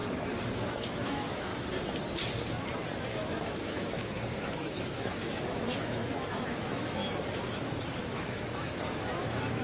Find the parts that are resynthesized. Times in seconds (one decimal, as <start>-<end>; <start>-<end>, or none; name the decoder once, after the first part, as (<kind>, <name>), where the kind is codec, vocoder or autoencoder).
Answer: 0.6-1.5 (autoencoder, DAC-VAE); 3.0-7.0; 8.0-9.6